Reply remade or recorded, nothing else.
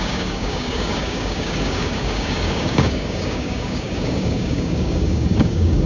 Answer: remade